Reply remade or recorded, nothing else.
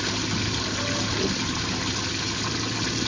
recorded